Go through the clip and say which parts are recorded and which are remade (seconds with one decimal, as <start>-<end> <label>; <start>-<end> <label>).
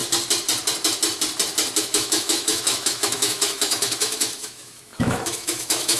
0.0-1.8 recorded; 1.8-6.0 remade